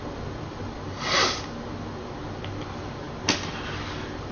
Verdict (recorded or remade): recorded